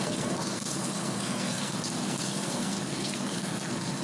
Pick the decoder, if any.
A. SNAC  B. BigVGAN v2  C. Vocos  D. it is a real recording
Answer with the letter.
A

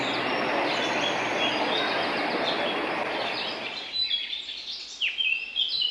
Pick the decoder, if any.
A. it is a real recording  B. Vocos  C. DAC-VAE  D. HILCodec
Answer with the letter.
A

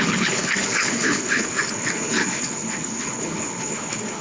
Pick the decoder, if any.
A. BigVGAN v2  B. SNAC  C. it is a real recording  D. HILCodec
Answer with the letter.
D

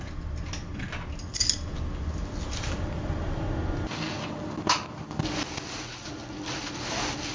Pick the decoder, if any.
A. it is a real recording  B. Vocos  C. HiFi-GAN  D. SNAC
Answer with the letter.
A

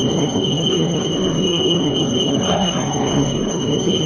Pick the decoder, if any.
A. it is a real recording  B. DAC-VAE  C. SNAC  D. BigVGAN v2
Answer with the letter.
C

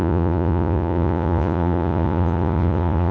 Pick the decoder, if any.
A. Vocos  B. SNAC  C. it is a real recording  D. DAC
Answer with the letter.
A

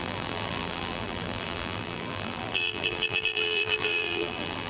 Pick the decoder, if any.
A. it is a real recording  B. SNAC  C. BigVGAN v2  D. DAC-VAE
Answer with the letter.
C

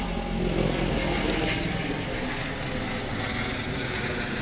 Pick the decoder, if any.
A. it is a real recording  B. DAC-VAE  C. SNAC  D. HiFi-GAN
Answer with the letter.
A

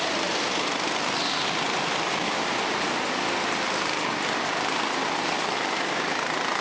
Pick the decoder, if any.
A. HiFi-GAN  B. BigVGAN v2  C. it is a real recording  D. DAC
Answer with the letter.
C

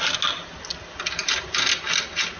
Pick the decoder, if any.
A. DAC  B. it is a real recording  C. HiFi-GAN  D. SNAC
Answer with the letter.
B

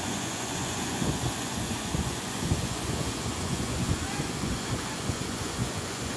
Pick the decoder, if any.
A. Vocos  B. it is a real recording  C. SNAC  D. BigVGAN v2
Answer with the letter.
A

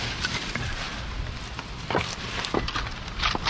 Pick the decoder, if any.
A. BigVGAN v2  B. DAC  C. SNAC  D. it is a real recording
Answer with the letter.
D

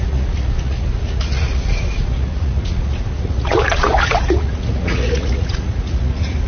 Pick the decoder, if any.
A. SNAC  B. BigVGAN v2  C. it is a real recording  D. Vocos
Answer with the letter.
D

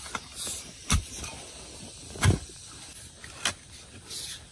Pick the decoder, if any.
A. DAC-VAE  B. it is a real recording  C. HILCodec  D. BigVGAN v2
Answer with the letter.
B